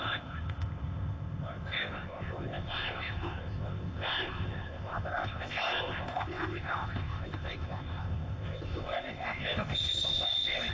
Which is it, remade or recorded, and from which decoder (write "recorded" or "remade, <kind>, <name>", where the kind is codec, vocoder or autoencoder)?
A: remade, codec, ZipCodec